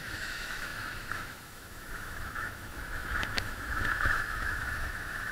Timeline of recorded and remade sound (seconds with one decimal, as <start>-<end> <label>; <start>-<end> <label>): 0.0-5.3 remade

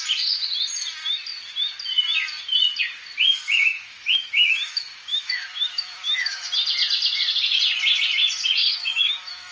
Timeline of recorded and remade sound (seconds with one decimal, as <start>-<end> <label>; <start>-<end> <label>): 0.0-3.3 recorded; 3.3-6.5 remade; 6.5-8.6 recorded; 8.6-9.5 remade

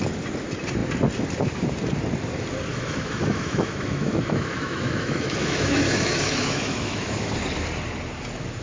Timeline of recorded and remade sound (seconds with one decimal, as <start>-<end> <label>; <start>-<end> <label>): 0.0-2.7 recorded; 2.7-7.3 remade; 7.3-8.6 recorded

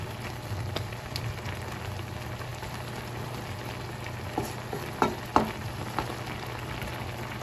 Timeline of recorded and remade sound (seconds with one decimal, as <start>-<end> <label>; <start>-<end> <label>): 0.0-7.4 recorded

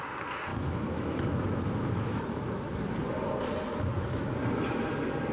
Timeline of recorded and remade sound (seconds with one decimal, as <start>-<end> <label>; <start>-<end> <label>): 0.0-0.5 recorded; 0.5-2.8 remade; 2.8-5.3 recorded

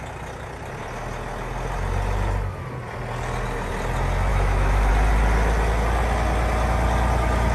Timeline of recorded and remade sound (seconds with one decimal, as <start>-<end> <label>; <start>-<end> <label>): 0.0-4.3 recorded; 4.3-4.9 remade; 4.9-7.5 recorded